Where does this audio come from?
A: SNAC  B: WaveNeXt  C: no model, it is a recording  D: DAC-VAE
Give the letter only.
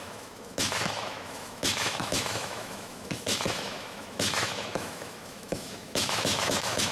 D